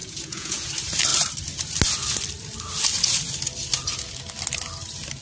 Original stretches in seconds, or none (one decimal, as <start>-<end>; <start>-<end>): 0.7-5.2